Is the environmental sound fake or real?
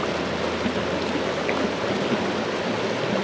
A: real